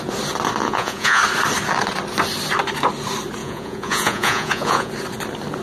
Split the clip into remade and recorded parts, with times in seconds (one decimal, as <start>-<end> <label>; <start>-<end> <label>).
0.0-0.6 recorded; 0.6-1.2 remade; 1.2-3.4 recorded; 3.4-4.9 remade; 4.9-5.6 recorded